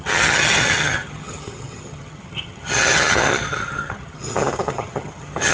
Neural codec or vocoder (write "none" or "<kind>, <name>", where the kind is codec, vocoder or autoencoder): vocoder, HiFi-GAN